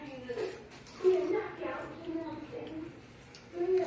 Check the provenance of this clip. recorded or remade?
remade